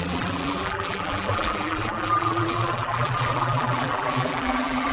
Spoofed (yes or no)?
yes